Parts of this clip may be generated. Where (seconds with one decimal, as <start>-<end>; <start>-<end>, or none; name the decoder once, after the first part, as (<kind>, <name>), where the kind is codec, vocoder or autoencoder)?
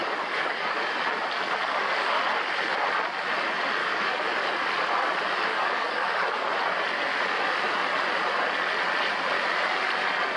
0.0-0.9 (codec, DAC); 1.7-2.2; 3.8-4.5; 5.5-6.4